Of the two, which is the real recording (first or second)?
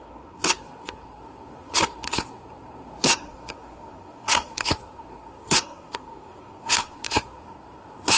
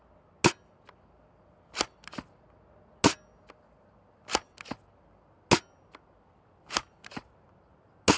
second